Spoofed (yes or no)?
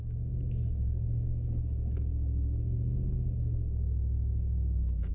yes